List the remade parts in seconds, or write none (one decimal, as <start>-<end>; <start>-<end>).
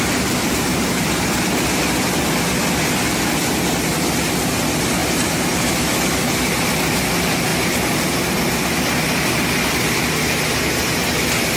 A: 0.7-1.2; 5.0-7.1